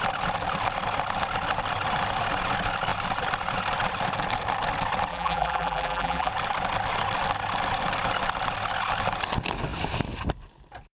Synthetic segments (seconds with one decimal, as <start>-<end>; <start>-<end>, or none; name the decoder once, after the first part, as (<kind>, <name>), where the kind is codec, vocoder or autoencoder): 5.1-6.3 (vocoder, BigVGAN v2)